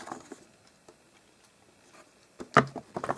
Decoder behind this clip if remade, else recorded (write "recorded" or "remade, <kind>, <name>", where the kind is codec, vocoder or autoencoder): recorded